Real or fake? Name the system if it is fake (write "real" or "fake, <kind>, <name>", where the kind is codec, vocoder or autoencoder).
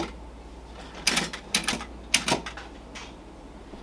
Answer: real